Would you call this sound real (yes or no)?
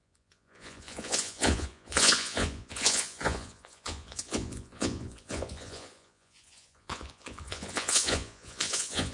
no